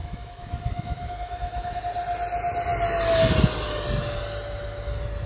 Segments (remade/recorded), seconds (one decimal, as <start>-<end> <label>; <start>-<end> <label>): 0.0-1.8 remade; 1.8-5.3 recorded